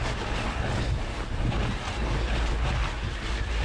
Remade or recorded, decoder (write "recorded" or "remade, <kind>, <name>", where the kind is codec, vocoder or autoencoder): recorded